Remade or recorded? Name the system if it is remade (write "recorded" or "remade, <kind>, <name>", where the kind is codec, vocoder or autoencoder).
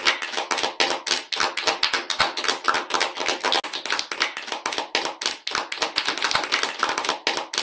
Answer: recorded